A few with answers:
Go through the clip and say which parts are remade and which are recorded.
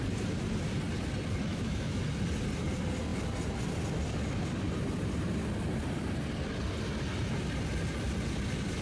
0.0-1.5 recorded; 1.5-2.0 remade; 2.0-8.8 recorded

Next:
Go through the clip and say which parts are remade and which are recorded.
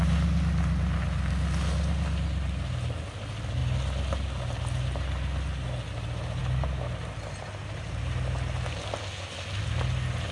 0.0-10.3 recorded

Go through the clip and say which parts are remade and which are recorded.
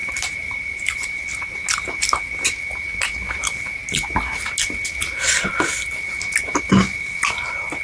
0.0-1.2 remade; 1.2-7.8 recorded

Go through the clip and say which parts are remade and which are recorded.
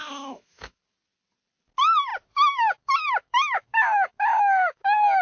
0.0-0.8 remade; 0.8-2.1 recorded; 2.1-5.2 remade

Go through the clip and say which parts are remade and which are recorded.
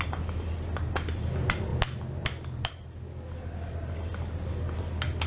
0.0-5.3 recorded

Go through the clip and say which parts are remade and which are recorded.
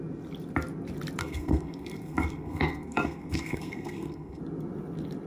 0.0-1.2 recorded; 1.2-4.4 remade; 4.4-5.3 recorded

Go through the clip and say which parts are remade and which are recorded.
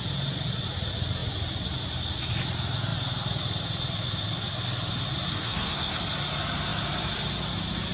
0.0-5.3 recorded; 5.3-6.0 remade; 6.0-7.9 recorded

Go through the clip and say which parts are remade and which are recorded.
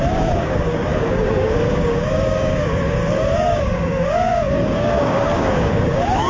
0.0-6.3 remade